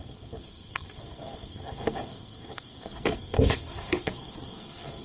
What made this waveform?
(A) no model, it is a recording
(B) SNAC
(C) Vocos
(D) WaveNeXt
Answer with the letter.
B